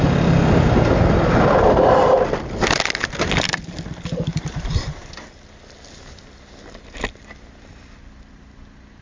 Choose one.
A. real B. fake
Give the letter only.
A